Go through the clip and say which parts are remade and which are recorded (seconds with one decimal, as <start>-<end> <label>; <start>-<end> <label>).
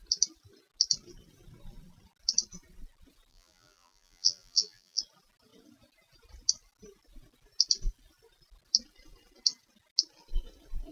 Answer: 0.0-3.3 recorded; 3.3-5.0 remade; 5.0-10.9 recorded